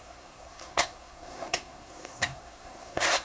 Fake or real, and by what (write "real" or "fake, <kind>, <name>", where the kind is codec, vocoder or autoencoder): fake, codec, SNAC